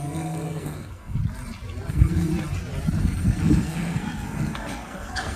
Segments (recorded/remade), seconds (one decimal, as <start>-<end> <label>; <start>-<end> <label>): 0.0-1.2 remade; 1.2-1.9 recorded; 1.9-2.3 remade; 2.3-3.0 recorded; 3.0-5.4 remade